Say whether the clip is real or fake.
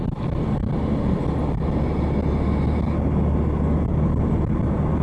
real